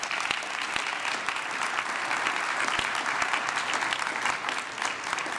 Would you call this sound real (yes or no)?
yes